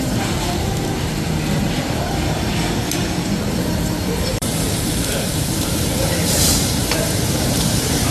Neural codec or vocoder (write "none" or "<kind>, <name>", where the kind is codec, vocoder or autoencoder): vocoder, BigVGAN v2